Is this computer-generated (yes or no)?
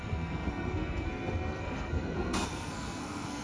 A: yes